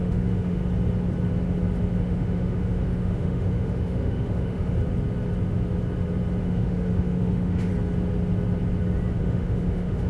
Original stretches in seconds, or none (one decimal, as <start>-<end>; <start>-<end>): 0.6-2.0; 4.8-6.4; 7.7-9.2

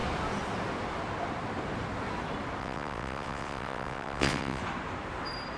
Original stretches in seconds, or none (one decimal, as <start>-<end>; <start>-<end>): 0.0-2.6; 4.6-5.6

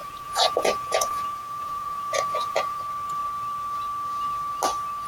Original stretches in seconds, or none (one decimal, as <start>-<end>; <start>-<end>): 2.8-5.1

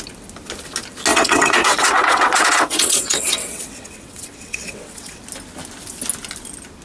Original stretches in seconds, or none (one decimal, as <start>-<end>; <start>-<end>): 0.0-1.1; 5.2-6.8

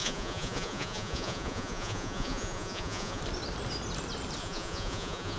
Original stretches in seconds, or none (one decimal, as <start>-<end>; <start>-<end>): 3.2-4.4

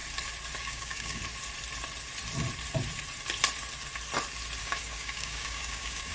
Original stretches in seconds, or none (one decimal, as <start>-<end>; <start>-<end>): 0.0-0.6; 1.2-4.6

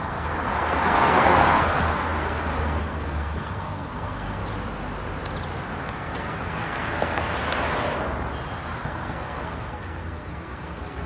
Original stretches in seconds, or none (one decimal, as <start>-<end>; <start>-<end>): 4.4-5.8; 7.4-8.8

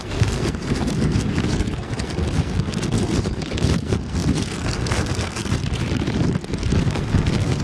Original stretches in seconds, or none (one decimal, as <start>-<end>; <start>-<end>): 5.6-6.8